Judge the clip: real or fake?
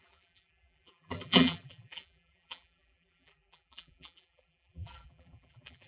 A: fake